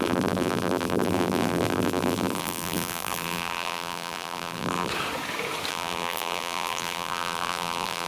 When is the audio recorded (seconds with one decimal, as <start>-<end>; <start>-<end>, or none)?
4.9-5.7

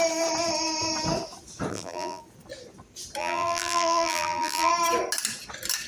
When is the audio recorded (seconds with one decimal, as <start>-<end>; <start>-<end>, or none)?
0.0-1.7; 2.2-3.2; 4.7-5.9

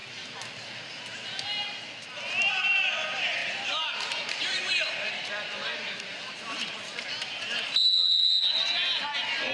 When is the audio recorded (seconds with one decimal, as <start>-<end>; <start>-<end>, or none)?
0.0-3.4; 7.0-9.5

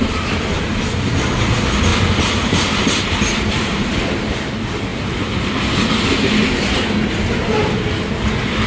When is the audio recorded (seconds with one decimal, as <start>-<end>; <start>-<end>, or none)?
0.0-1.9; 3.9-8.7

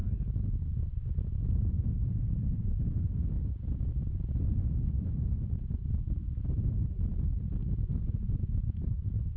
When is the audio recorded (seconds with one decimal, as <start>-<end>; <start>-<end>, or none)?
0.0-0.6; 7.6-8.6

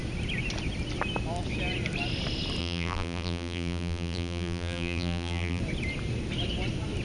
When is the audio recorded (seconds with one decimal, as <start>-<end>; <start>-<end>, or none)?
0.0-2.6; 5.6-7.0

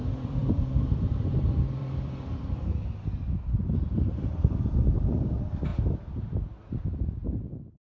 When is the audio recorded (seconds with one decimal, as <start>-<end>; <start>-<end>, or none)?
5.7-7.9